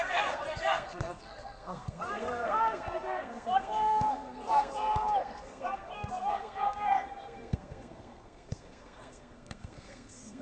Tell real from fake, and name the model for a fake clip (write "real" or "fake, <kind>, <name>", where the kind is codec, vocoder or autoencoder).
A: fake, codec, SNAC